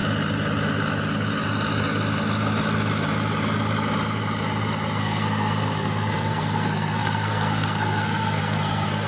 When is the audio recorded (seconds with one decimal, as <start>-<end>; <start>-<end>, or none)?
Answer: 0.0-5.0